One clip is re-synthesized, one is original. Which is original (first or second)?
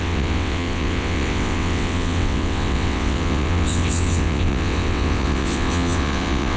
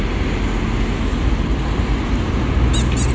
second